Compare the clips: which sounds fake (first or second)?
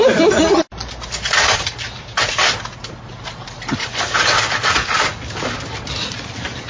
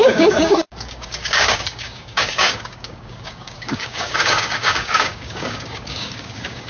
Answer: second